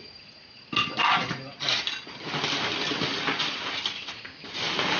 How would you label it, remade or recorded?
recorded